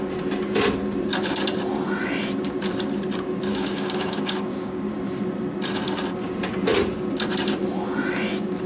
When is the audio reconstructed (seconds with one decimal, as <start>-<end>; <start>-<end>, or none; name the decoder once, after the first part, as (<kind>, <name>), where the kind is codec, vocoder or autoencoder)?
3.5-4.9 (codec, DAC)